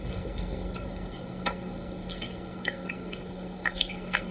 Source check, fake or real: fake